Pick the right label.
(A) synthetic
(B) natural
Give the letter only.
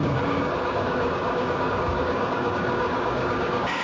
A